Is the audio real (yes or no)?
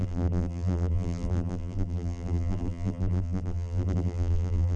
no